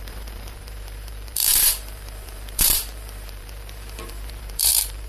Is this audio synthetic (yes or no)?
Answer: yes